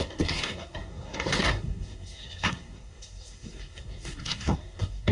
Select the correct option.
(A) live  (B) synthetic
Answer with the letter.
B